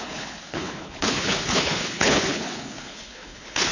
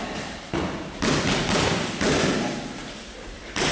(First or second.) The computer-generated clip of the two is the first